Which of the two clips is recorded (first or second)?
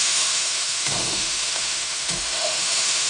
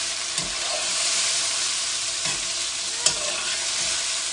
second